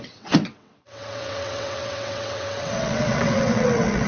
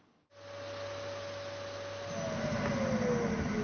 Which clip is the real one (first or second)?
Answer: second